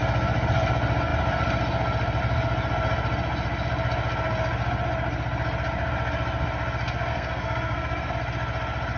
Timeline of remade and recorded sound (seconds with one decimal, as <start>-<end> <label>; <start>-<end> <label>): 0.0-7.1 recorded; 7.1-8.1 remade; 8.1-9.0 recorded